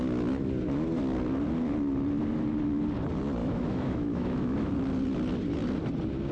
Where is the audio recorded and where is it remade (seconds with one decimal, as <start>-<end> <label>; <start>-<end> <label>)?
0.0-3.4 recorded; 3.4-4.7 remade; 4.7-6.3 recorded